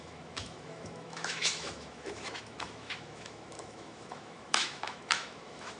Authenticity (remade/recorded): remade